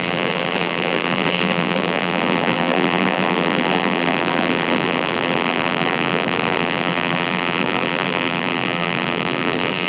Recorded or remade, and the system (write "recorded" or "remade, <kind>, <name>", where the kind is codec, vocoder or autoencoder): remade, vocoder, BigVGAN v2